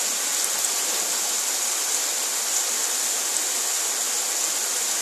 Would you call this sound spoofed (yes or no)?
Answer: no